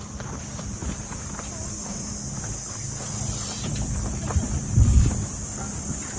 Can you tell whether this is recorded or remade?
remade